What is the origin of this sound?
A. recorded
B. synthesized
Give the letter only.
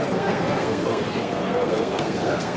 B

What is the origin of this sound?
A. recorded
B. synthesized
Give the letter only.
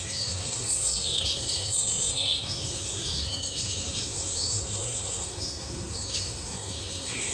B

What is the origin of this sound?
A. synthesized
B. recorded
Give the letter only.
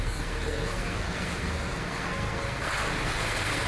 A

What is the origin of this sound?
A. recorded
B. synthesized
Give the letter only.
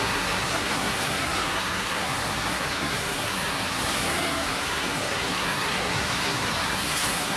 B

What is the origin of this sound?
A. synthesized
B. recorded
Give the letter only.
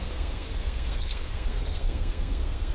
A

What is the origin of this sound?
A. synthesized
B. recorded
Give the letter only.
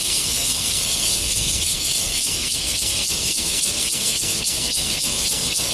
A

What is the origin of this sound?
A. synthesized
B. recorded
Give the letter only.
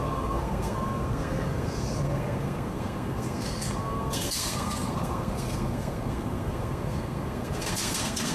A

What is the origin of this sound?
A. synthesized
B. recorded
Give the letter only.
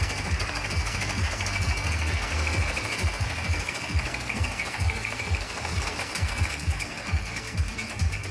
A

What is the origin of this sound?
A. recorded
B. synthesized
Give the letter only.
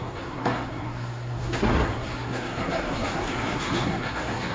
B